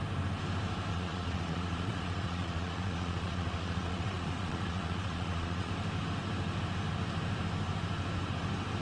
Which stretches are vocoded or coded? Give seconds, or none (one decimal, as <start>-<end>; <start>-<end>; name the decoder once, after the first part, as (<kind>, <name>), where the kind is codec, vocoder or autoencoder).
0.9-5.7 (vocoder, Vocos)